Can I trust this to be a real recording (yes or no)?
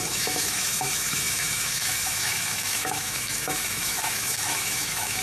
no